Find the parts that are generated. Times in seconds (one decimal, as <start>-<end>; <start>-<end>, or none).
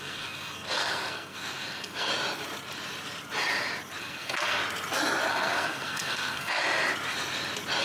0.0-2.1; 4.0-4.6; 5.3-6.6